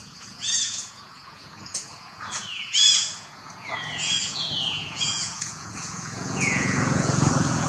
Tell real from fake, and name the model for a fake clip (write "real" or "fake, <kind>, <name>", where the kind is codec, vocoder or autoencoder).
fake, vocoder, Vocos